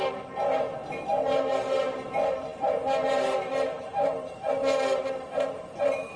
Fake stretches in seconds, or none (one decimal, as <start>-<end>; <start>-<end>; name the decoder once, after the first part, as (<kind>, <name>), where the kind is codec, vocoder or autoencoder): 0.0-6.2 (vocoder, BigVGAN v2)